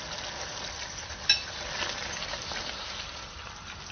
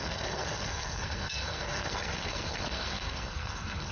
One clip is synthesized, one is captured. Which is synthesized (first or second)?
second